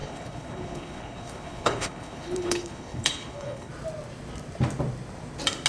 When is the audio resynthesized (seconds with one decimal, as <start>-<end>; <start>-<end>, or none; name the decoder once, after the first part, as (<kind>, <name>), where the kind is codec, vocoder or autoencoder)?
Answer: 0.0-3.7 (codec, HILCodec)